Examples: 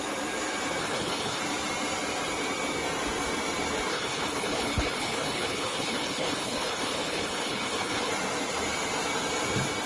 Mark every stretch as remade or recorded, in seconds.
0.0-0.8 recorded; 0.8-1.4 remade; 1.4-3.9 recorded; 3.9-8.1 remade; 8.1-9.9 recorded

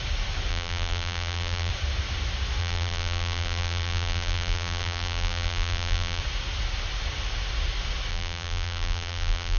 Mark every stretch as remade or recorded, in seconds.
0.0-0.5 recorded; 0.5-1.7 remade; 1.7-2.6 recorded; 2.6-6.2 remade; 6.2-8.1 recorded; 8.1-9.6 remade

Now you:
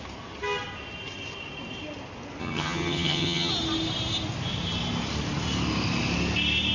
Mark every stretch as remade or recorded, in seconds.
0.0-2.4 recorded; 2.4-3.5 remade; 3.5-6.7 recorded